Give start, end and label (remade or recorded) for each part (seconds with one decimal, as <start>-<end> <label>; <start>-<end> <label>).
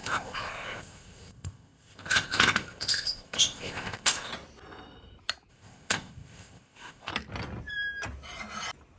0.0-4.3 remade; 4.3-5.5 recorded; 5.5-7.1 remade; 7.1-9.0 recorded